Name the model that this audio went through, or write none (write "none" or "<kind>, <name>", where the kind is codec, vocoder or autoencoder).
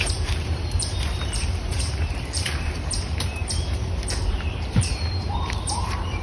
vocoder, BigVGAN v2